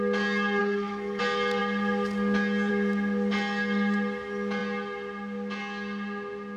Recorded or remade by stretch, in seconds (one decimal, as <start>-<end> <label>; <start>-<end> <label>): 0.0-0.6 recorded; 0.6-1.2 remade; 1.2-6.6 recorded